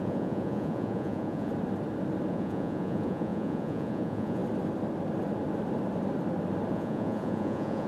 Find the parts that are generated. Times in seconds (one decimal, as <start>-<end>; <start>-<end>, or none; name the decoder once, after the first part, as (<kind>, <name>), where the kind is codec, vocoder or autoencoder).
0.0-1.5 (vocoder, Vocos); 2.3-4.4; 6.7-7.9